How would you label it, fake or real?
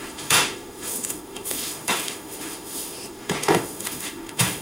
fake